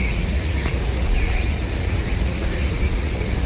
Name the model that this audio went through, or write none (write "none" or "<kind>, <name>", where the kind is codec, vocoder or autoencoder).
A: vocoder, Vocos